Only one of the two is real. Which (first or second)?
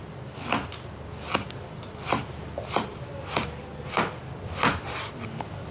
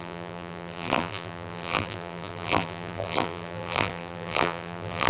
first